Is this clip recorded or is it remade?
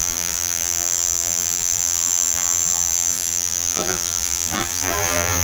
remade